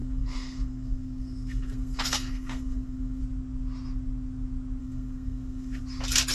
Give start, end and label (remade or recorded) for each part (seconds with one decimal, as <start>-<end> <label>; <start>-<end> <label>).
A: 0.0-3.2 remade; 3.2-4.8 recorded; 4.8-5.8 remade; 5.8-6.3 recorded